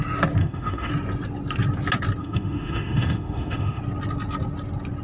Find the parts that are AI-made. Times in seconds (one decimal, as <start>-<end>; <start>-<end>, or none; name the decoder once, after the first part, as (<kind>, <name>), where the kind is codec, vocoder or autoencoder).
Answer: 0.4-0.9 (autoencoder, DAC-VAE); 2.2-3.8